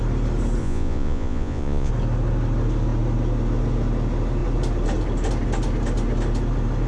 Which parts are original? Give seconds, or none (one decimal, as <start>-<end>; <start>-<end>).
0.0-0.6; 1.9-6.9